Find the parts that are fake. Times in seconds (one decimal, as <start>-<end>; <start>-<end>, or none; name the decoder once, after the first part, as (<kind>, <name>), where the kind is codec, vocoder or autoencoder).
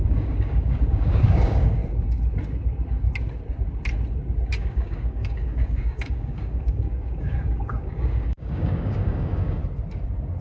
0.0-1.8 (codec, DAC); 4.5-9.6